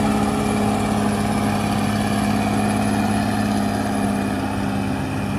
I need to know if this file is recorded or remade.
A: recorded